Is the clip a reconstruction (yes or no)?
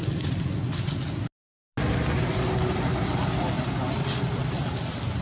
no